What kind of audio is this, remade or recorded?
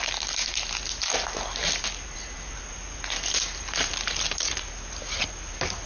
recorded